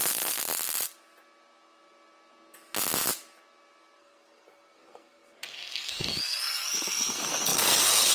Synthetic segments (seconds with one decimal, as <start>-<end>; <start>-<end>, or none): 0.0-0.4; 4.0-8.1